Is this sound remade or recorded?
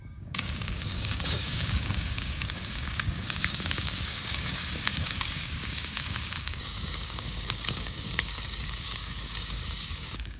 remade